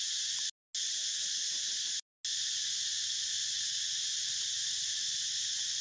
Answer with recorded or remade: recorded